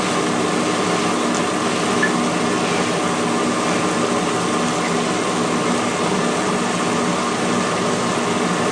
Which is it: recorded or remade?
recorded